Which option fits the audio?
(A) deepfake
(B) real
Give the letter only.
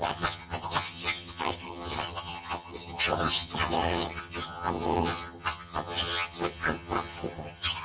A